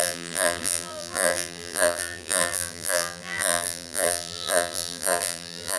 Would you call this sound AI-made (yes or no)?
yes